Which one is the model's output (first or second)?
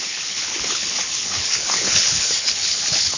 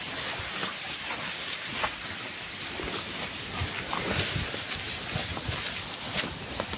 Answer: first